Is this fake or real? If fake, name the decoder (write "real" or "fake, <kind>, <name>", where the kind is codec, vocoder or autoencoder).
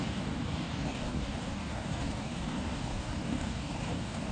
fake, codec, DAC